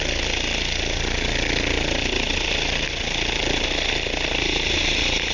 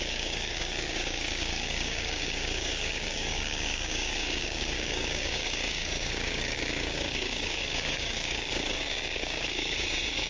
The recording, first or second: first